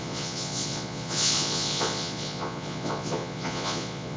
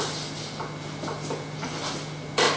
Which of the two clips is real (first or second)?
second